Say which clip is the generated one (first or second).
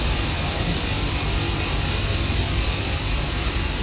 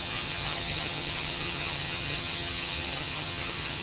second